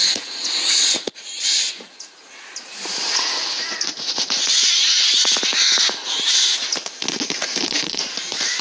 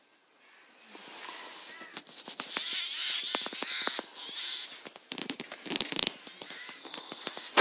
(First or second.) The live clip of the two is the second